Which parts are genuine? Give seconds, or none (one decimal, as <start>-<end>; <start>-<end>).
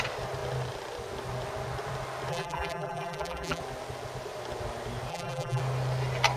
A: 0.0-2.3; 3.6-5.1; 5.6-6.4